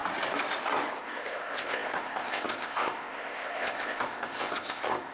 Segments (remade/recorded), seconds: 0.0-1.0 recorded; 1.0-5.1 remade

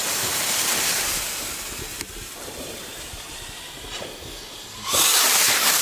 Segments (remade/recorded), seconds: 0.0-1.9 recorded; 1.9-5.8 remade

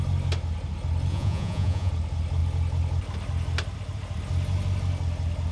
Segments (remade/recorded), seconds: 0.0-1.1 recorded; 1.1-1.9 remade; 1.9-5.5 recorded